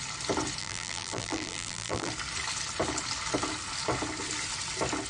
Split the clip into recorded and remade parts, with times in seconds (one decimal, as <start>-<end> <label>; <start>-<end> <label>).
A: 0.0-0.6 recorded; 0.6-2.1 remade; 2.1-5.1 recorded